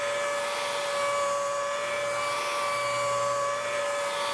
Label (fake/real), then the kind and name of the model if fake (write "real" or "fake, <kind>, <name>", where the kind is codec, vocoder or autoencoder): real